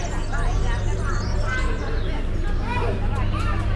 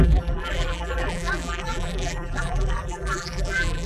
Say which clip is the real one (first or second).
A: first